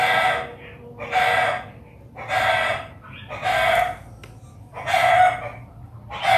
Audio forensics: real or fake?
real